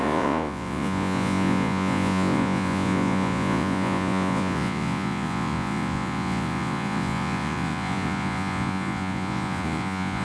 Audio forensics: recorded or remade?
remade